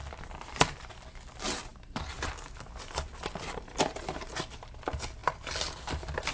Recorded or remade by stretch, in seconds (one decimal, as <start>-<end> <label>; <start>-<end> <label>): 0.0-0.9 remade; 0.9-1.7 recorded; 1.7-2.6 remade; 2.6-6.3 recorded